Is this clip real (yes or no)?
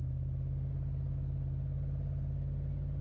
yes